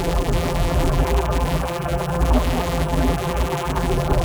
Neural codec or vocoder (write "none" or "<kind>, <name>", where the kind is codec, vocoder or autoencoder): vocoder, BigVGAN v2